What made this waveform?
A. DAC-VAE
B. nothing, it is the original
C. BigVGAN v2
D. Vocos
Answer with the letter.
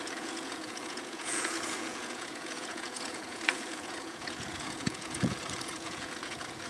D